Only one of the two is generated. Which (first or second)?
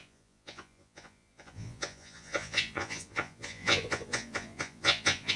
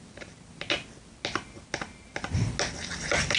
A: first